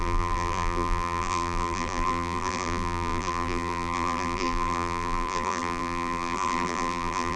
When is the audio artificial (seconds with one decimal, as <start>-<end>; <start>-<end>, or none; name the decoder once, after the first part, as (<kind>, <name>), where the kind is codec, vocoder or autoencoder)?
0.0-7.4 (vocoder, BigVGAN v2)